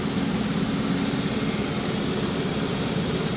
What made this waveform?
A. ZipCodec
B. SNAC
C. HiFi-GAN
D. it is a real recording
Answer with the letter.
D